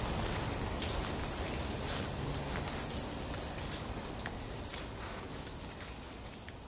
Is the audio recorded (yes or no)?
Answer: yes